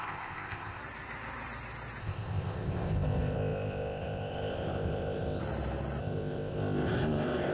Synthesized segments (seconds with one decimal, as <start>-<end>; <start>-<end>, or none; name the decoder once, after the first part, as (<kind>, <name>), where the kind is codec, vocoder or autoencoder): 0.0-0.8 (codec, ZipCodec); 2.0-5.4; 6.0-7.5